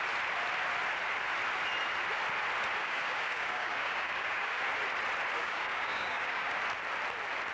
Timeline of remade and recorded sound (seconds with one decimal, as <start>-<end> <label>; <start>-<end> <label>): 0.0-2.8 recorded; 2.8-4.6 remade; 4.6-5.4 recorded; 5.4-6.6 remade; 6.6-7.5 recorded